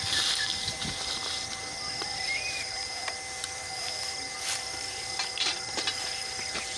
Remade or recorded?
remade